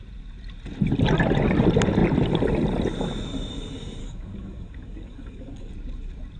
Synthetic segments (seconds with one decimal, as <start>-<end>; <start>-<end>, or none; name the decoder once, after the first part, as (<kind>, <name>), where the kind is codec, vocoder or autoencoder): 4.0-5.7 (codec, DAC)